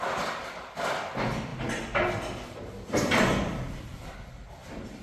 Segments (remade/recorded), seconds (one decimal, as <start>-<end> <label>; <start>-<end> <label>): 0.0-5.0 recorded